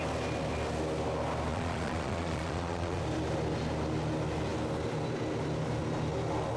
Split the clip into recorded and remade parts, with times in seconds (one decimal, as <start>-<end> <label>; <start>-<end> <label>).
0.0-1.5 recorded; 1.5-3.0 remade; 3.0-6.6 recorded

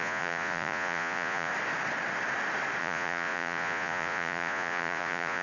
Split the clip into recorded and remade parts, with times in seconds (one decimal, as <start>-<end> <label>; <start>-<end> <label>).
0.0-1.5 remade; 1.5-2.8 recorded; 2.8-5.4 remade

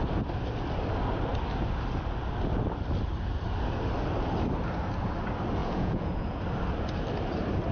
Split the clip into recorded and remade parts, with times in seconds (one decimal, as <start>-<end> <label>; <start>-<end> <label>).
0.0-5.6 recorded; 5.6-6.4 remade; 6.4-7.7 recorded

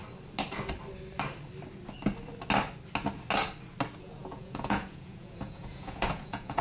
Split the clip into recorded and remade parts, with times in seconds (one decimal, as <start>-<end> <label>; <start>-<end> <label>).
0.0-4.0 recorded; 4.0-6.6 remade

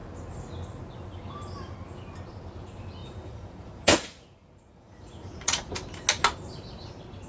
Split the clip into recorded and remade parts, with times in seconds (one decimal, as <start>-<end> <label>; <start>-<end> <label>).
0.0-3.0 recorded; 3.0-5.7 remade; 5.7-7.3 recorded

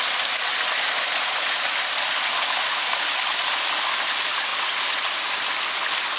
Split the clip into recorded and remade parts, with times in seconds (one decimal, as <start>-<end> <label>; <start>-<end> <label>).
0.0-6.2 recorded

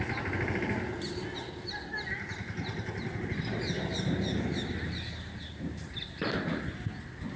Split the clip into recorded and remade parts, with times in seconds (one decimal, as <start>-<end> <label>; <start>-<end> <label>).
0.0-7.4 recorded